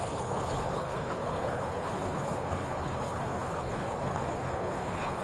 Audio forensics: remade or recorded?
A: remade